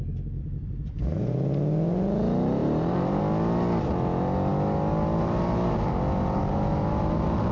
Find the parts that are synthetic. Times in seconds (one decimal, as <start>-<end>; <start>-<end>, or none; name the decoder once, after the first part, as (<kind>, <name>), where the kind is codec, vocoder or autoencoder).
0.4-1.0 (vocoder, BigVGAN v2); 2.6-3.2